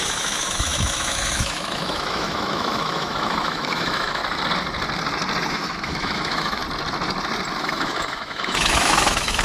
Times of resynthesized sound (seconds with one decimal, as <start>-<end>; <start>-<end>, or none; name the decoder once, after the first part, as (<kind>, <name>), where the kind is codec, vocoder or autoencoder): 0.0-4.2 (autoencoder, DAC-VAE); 5.5-6.6; 7.6-9.4

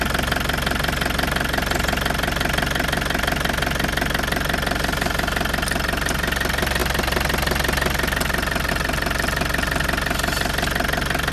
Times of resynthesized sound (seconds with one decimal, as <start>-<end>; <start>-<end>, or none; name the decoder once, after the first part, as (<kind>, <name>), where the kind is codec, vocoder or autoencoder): none

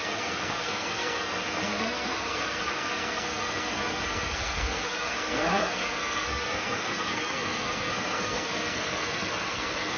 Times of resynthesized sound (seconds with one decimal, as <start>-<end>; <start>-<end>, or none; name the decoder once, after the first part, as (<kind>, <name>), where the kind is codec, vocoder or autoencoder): 0.0-10.0 (codec, SNAC)

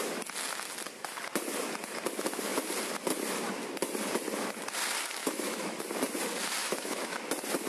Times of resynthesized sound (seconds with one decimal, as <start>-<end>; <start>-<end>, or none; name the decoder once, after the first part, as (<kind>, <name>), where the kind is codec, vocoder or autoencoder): 5.2-5.8 (autoencoder, DAC-VAE); 6.6-7.2

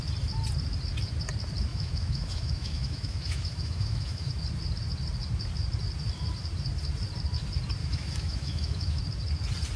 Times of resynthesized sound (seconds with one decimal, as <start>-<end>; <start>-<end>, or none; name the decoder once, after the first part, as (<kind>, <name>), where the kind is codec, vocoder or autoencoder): 1.7-4.3 (autoencoder, DAC-VAE); 7.8-9.0

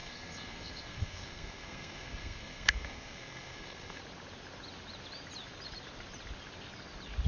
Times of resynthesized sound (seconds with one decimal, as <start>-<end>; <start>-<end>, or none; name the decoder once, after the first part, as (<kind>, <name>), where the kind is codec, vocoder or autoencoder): 0.0-4.0 (codec, SNAC)

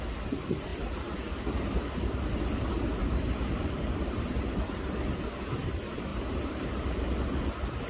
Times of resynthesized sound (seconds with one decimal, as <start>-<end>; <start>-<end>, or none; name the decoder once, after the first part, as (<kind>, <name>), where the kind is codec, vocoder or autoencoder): 0.7-1.4 (vocoder, BigVGAN v2); 3.0-5.1; 6.1-6.8

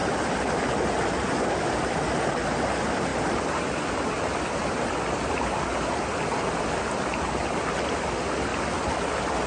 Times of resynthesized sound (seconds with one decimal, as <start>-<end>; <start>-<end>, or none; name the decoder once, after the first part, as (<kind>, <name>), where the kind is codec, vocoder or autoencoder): none